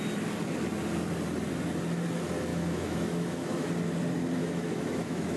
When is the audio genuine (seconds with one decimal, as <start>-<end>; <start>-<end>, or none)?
0.0-2.5; 3.7-4.4